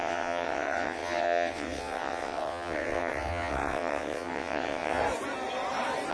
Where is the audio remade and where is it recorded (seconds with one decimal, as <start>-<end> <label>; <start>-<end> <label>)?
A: 0.0-5.0 remade; 5.0-6.1 recorded